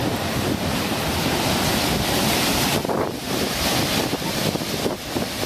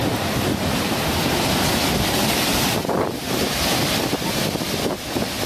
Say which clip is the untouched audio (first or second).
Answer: second